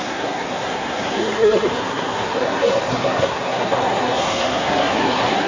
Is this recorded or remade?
remade